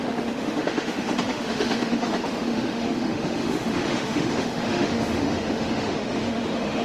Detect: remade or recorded remade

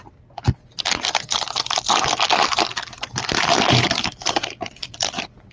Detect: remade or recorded recorded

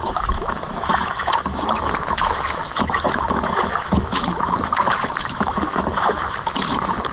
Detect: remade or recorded remade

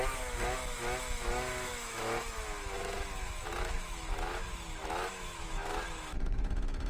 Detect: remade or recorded remade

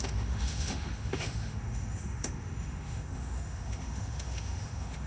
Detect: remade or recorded remade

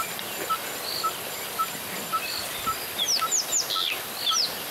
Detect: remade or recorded recorded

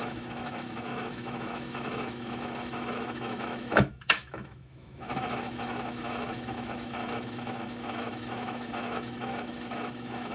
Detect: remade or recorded remade